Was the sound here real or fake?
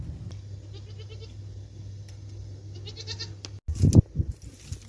real